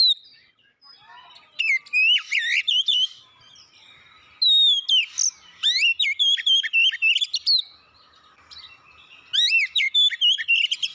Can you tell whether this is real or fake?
real